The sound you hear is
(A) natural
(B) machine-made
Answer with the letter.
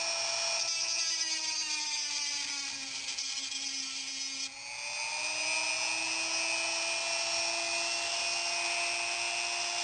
A